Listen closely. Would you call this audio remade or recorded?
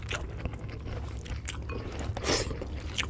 recorded